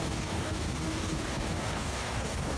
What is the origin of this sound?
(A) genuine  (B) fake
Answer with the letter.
B